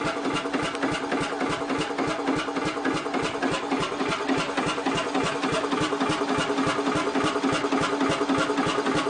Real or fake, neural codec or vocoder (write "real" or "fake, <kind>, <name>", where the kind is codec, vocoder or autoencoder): real